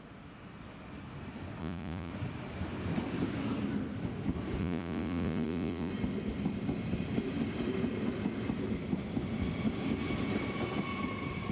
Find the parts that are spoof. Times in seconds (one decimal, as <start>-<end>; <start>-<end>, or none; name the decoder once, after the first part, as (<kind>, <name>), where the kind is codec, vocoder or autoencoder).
1.6-2.1 (vocoder, Vocos); 4.6-5.9